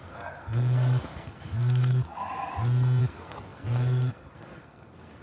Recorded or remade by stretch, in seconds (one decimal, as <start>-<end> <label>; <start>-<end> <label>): 0.0-2.3 remade; 2.3-3.0 recorded; 3.0-5.2 remade